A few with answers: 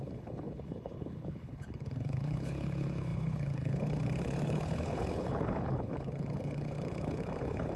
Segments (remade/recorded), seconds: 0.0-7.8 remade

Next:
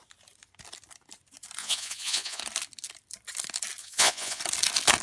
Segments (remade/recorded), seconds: 0.0-1.6 recorded; 1.6-2.4 remade; 2.4-3.8 recorded; 3.8-4.4 remade; 4.4-5.0 recorded

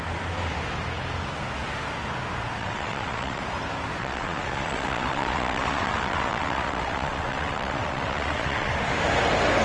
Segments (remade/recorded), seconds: 0.0-2.6 recorded; 2.6-3.4 remade; 3.4-4.0 recorded; 4.0-8.7 remade; 8.7-9.6 recorded